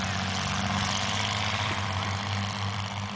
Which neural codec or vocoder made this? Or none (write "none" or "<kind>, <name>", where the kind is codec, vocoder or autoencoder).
none